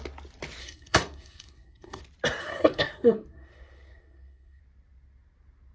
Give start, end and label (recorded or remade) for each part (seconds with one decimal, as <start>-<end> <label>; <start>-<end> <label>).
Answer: 0.0-0.6 recorded; 0.6-2.0 remade; 2.0-2.4 recorded; 2.4-4.6 remade; 4.6-5.7 recorded